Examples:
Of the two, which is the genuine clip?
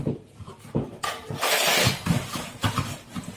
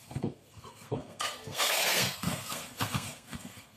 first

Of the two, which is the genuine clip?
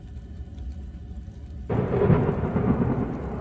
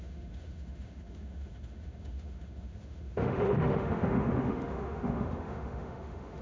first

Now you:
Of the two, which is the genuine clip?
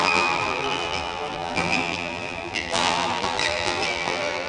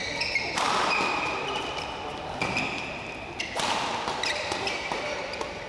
second